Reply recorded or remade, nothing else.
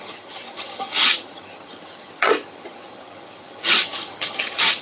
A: remade